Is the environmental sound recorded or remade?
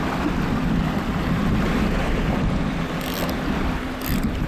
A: recorded